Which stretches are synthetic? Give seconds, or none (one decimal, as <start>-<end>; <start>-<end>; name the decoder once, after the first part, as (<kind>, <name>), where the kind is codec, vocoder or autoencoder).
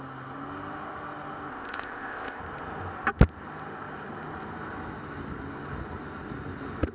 1.5-2.4 (codec, ZipCodec)